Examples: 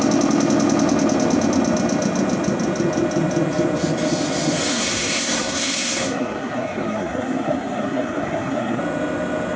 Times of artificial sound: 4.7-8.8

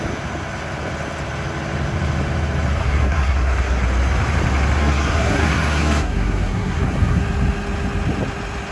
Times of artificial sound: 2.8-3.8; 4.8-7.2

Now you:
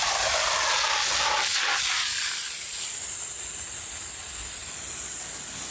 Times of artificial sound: none